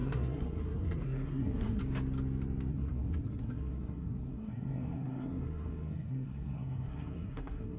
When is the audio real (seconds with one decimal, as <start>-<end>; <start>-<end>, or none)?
1.8-2.7